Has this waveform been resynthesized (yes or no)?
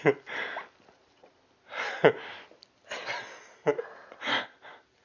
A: no